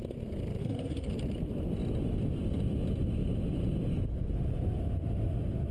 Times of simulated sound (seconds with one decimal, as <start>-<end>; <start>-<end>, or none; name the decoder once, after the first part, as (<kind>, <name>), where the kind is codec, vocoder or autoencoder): 0.6-1.1 (codec, SNAC)